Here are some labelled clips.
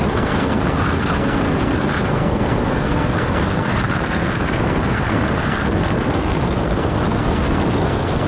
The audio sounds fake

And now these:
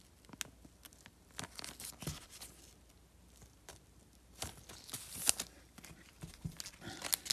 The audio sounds real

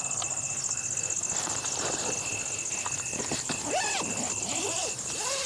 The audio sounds real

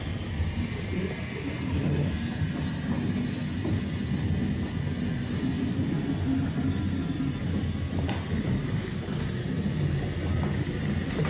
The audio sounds real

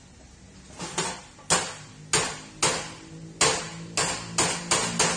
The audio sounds real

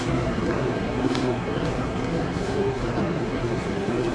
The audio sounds fake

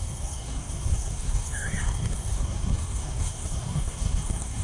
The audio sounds fake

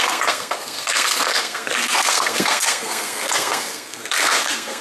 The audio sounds fake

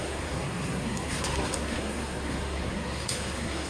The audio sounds fake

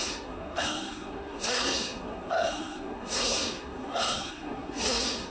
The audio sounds fake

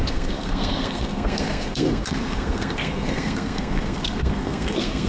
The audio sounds fake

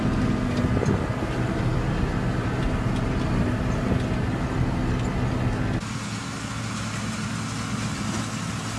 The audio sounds real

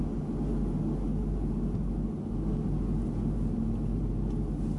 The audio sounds real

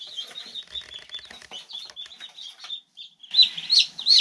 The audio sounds real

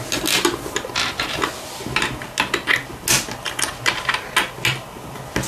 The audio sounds real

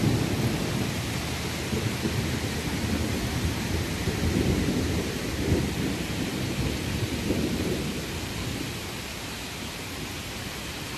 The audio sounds real